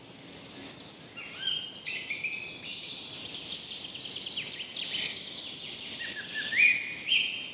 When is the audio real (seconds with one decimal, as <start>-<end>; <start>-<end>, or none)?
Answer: 0.0-2.7; 3.4-7.5